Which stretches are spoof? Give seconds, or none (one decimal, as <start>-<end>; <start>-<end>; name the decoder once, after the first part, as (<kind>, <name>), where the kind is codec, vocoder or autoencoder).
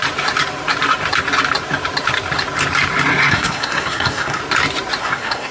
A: 3.3-4.4 (codec, SNAC); 5.0-5.5